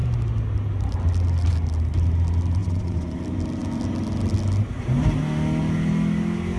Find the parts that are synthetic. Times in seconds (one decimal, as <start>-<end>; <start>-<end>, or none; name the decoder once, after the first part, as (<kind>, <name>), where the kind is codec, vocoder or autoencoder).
2.6-3.2 (vocoder, Vocos)